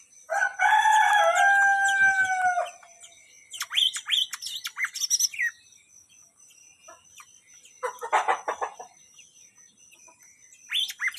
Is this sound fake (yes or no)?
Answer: no